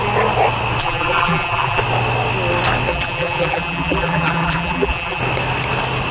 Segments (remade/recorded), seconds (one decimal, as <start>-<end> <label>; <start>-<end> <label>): 0.0-0.8 recorded; 0.8-1.8 remade; 1.8-2.9 recorded; 2.9-5.2 remade; 5.2-6.1 recorded